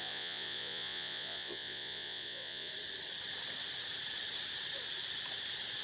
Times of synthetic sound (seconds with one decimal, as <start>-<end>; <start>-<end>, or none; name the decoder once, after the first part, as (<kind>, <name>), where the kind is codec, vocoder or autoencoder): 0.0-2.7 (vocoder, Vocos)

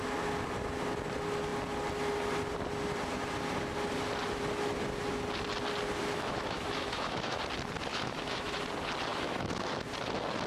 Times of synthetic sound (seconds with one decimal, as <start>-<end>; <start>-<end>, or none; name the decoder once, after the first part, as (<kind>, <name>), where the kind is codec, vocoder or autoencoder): 6.0-7.4 (autoencoder, DAC-VAE); 7.9-8.6; 9.1-9.8

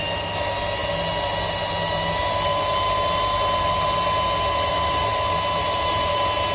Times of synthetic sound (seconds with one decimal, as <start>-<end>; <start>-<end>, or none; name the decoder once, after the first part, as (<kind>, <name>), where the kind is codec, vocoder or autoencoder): none